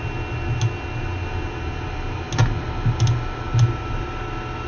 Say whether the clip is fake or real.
real